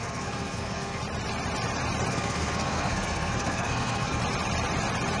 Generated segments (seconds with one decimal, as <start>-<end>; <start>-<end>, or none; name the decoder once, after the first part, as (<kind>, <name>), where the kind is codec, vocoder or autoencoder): 0.0-1.0 (codec, SNAC); 2.1-4.2